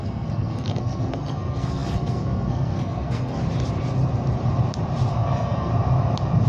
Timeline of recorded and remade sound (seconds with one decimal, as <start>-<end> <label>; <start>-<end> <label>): 0.0-3.4 remade; 3.4-5.1 recorded; 5.1-5.7 remade; 5.7-6.5 recorded